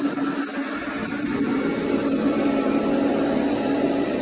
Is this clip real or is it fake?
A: real